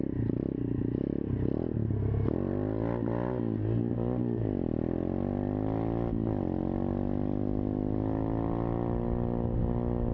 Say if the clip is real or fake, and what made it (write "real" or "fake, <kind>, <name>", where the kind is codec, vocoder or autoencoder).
real